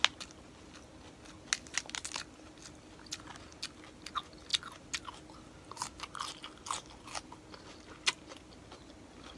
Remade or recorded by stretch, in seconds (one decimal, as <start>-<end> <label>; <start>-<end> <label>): 0.0-9.4 recorded